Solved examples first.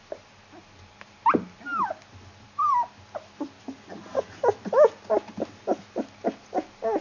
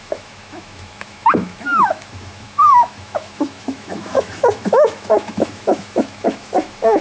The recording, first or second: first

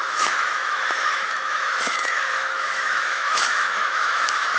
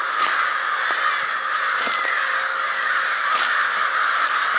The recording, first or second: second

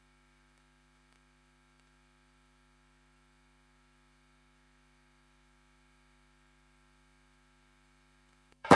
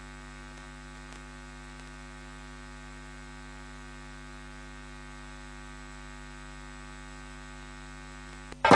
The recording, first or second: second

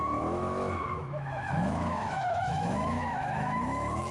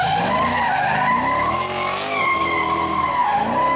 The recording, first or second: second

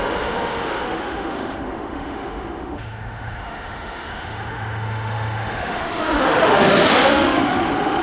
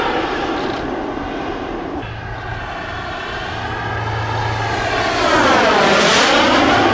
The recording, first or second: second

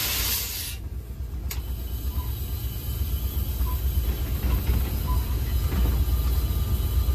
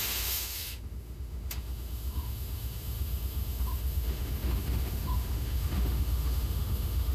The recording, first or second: first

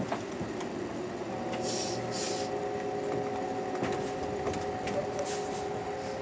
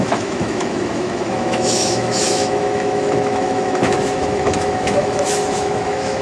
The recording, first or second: first